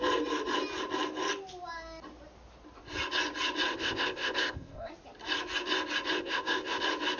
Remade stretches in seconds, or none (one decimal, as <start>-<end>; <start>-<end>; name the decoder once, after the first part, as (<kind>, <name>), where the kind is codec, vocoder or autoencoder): 3.7-4.9 (codec, ZipCodec); 6.2-6.8